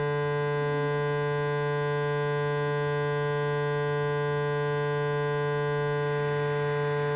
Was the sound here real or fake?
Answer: real